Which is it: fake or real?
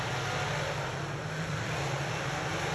real